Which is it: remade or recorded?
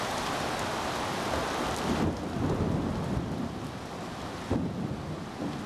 recorded